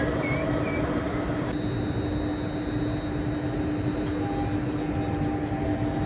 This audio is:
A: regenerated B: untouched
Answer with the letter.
B